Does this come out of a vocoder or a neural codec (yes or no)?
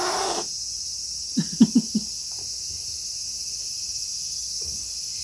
no